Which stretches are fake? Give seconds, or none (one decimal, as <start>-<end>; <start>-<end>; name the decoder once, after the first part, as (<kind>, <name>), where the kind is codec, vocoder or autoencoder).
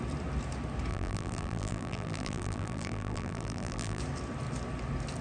0.9-4.0 (vocoder, BigVGAN v2)